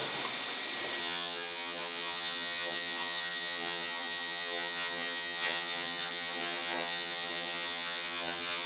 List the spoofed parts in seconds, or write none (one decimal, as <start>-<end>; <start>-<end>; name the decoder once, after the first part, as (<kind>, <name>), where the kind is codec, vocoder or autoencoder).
1.0-8.7 (vocoder, HiFi-GAN)